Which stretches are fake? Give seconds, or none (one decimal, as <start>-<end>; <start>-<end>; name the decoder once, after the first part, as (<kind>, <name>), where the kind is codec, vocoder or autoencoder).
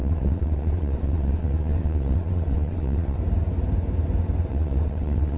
0.0-3.2 (vocoder, WaveNeXt); 4.5-5.4